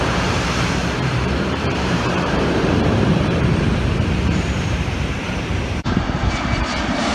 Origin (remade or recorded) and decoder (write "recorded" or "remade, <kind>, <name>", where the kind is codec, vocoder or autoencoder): remade, vocoder, BigVGAN v2